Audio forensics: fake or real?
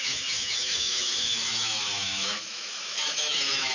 fake